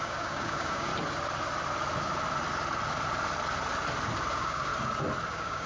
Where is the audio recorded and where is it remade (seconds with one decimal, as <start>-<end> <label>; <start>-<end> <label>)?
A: 0.0-0.9 remade; 0.9-4.3 recorded; 4.3-4.7 remade; 4.7-5.3 recorded; 5.3-5.7 remade